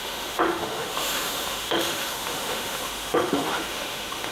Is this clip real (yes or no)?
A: no